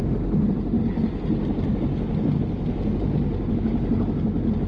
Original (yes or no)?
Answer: yes